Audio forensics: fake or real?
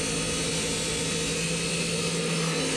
real